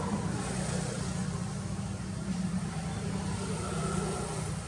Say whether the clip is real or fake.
real